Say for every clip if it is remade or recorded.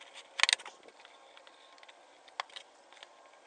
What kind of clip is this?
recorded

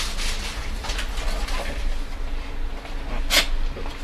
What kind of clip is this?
recorded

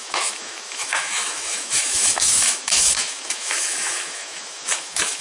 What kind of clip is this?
remade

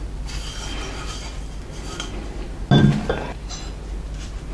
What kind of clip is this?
recorded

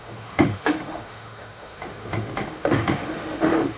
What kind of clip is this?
remade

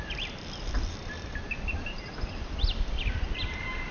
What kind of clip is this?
recorded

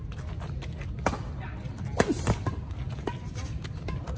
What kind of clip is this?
recorded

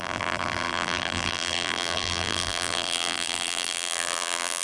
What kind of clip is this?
remade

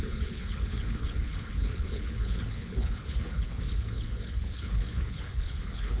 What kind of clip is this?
remade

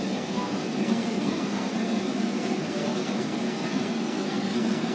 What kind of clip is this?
remade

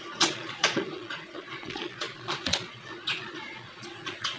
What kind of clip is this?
remade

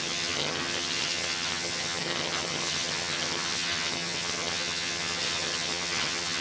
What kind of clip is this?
remade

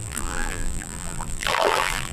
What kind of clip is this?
remade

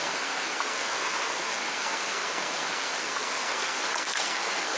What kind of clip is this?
remade